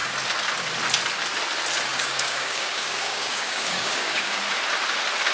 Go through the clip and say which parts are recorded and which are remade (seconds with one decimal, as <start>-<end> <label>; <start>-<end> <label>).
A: 0.0-1.9 recorded; 1.9-4.4 remade; 4.4-5.3 recorded